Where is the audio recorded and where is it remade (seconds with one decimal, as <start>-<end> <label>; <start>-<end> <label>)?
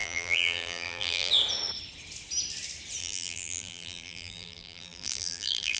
0.0-1.3 remade; 1.3-3.0 recorded; 3.0-5.8 remade